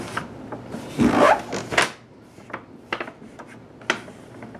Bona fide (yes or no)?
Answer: yes